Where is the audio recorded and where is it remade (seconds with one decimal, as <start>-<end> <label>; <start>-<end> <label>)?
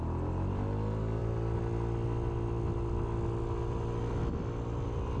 0.0-5.2 recorded